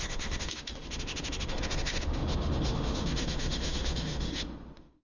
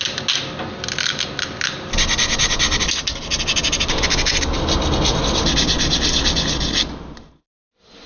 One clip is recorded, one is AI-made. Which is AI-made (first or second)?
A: first